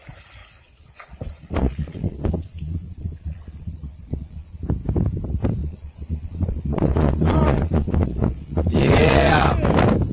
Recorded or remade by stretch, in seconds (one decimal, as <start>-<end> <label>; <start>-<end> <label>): 0.0-0.4 recorded; 0.4-4.6 remade; 4.6-5.6 recorded; 5.6-9.5 remade; 9.5-10.1 recorded